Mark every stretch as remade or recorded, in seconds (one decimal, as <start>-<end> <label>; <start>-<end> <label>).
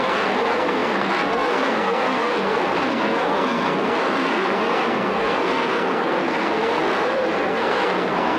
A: 0.0-8.4 remade